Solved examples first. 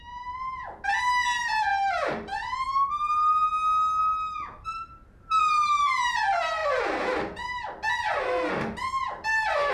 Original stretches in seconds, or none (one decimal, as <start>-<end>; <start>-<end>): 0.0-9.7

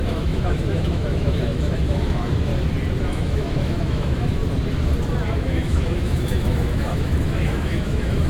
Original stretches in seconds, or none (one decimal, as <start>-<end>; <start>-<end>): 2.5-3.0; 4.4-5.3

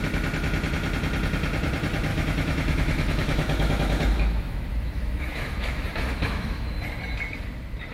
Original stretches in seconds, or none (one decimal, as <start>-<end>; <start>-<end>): 0.0-2.1; 6.8-7.9

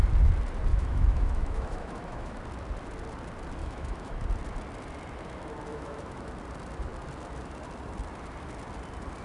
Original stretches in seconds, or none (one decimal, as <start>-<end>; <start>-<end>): 0.0-0.7; 2.4-3.6; 4.1-5.7; 6.3-9.2